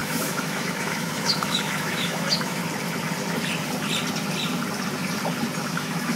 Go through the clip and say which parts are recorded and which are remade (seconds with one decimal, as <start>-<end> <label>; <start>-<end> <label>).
0.0-2.6 remade; 2.6-5.6 recorded; 5.6-6.2 remade